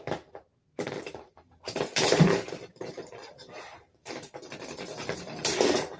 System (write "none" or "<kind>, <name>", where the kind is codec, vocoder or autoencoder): vocoder, BigVGAN v2